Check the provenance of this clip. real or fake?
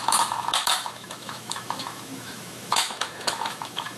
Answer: fake